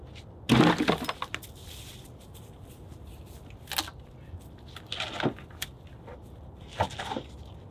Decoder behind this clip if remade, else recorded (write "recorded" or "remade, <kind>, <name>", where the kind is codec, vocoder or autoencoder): recorded